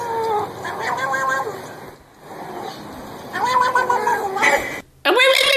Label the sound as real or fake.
real